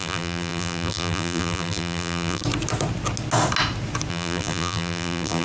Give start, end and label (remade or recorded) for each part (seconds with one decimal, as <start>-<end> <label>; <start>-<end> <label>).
0.0-2.4 remade; 2.4-4.1 recorded; 4.1-5.4 remade